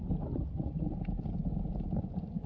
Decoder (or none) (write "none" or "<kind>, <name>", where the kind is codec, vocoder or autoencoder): none